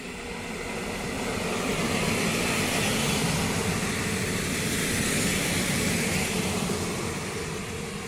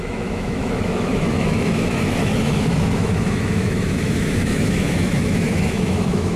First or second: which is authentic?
first